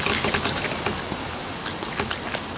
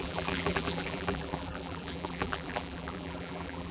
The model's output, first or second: second